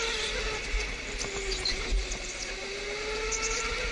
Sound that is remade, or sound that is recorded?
recorded